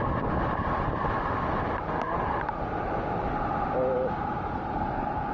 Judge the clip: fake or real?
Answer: real